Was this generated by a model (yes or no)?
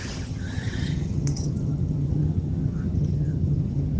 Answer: yes